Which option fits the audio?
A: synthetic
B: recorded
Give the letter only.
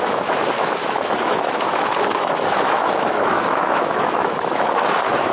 A